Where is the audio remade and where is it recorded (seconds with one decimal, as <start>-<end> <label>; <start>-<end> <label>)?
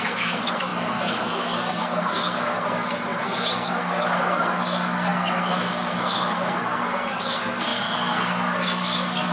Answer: 0.0-9.3 remade